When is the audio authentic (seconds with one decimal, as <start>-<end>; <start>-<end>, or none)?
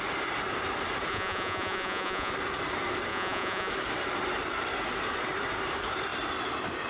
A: 0.0-1.1; 2.3-3.1; 3.7-6.9